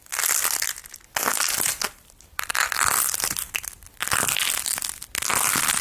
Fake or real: real